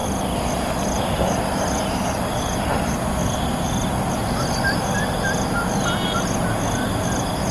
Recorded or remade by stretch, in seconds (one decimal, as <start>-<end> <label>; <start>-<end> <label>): 0.0-7.5 recorded